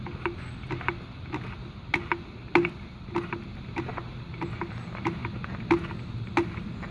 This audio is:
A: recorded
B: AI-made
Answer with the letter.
A